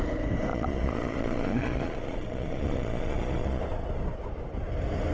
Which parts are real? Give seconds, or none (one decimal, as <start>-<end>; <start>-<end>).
0.0-0.5; 3.6-5.1